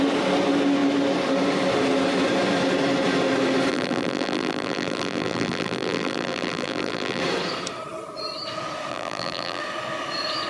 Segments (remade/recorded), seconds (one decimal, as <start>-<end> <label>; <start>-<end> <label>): 0.0-3.7 recorded; 3.7-7.2 remade; 7.2-8.9 recorded; 8.9-9.6 remade; 9.6-10.5 recorded